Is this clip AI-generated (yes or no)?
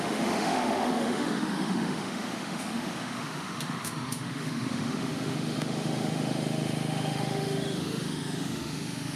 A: yes